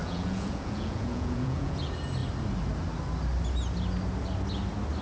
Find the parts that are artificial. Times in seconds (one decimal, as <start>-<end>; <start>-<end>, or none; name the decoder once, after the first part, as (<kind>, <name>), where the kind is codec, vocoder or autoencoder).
0.0-1.8 (vocoder, Vocos)